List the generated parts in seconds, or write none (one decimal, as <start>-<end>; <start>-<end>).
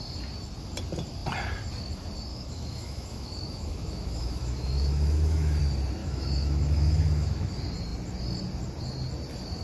2.3-5.6; 6.0-7.5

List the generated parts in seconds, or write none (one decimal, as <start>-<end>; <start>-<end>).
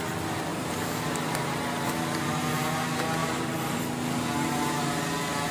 0.5-1.6; 3.2-3.8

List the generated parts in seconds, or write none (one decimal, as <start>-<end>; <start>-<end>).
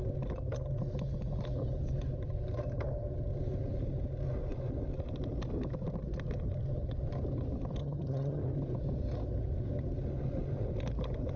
7.8-8.4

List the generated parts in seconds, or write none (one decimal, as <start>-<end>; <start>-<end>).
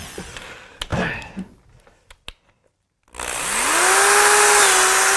none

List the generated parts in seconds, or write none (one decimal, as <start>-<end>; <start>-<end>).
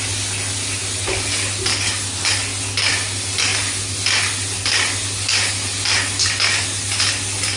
none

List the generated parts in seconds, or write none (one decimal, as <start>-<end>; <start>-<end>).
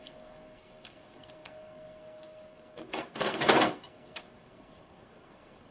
0.0-5.7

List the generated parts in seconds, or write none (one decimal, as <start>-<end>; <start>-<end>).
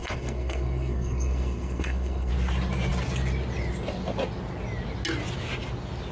0.0-2.3